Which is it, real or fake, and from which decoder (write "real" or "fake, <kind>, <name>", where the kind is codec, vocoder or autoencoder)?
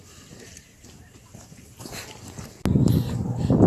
real